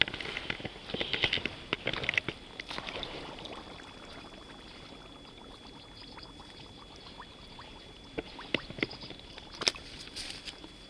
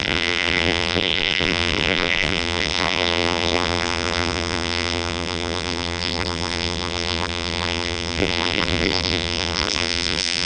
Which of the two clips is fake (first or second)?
second